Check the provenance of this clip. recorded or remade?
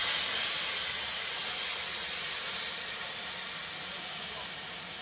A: recorded